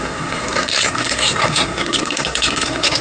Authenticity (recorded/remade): remade